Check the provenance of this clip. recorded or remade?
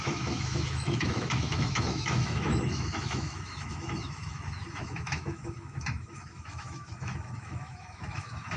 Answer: remade